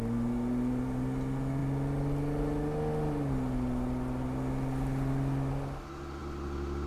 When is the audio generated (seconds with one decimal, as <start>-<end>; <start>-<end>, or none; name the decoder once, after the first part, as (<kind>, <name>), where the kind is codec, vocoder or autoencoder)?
none